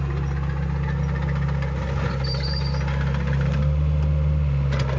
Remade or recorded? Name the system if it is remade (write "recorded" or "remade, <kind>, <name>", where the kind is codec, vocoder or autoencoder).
recorded